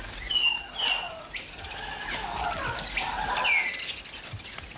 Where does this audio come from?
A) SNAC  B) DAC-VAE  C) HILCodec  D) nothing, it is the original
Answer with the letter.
D